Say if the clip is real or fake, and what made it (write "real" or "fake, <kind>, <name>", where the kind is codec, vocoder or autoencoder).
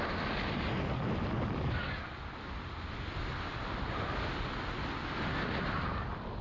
real